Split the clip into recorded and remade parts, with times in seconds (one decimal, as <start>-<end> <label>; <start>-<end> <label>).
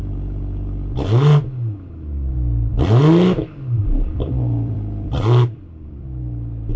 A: 0.0-3.8 recorded; 3.8-6.8 remade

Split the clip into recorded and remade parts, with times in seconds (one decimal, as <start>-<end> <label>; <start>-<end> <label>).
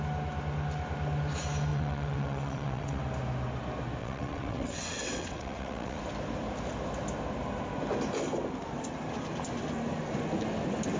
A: 0.0-1.7 recorded; 1.7-3.0 remade; 3.0-4.0 recorded; 4.0-6.0 remade; 6.0-11.0 recorded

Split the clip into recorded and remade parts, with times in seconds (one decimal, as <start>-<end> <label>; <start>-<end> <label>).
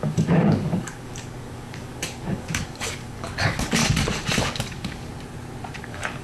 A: 0.0-3.8 remade; 3.8-4.4 recorded; 4.4-5.1 remade; 5.1-5.8 recorded; 5.8-6.2 remade